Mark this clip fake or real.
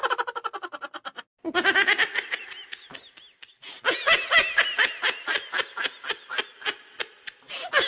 real